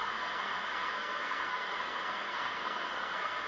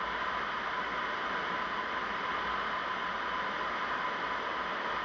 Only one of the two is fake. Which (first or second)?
first